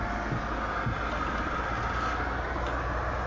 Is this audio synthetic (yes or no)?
no